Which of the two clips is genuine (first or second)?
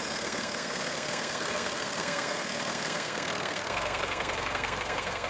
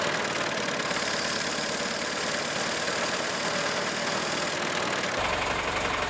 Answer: second